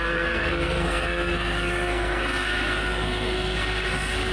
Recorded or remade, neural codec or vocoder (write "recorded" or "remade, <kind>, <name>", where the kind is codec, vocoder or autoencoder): remade, codec, SNAC